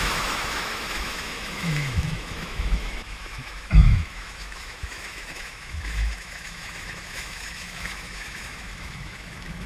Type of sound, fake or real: fake